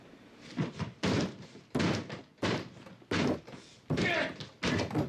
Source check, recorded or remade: recorded